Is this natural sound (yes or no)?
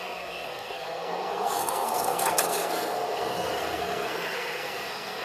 no